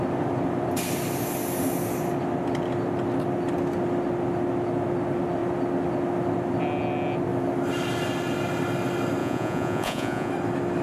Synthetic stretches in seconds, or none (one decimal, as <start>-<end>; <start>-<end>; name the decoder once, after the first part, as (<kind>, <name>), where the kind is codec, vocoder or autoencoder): 9.2-10.3 (vocoder, Vocos)